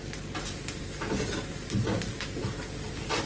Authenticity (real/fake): real